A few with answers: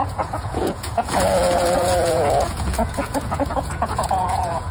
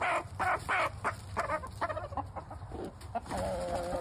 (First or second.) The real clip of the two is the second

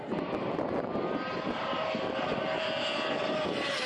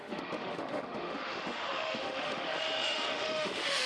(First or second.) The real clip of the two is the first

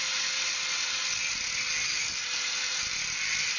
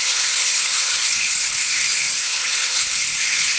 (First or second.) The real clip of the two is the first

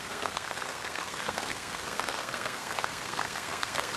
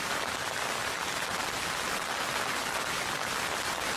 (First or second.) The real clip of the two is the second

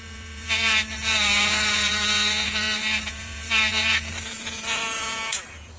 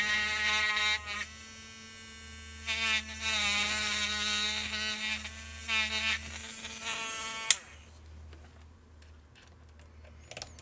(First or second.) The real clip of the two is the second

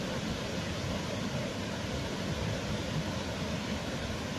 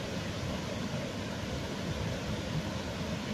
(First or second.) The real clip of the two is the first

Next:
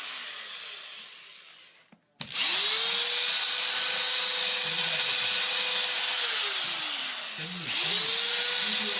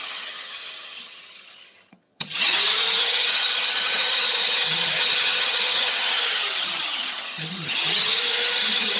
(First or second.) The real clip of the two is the first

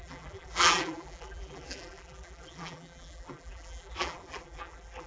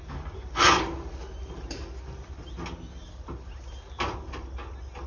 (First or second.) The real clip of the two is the second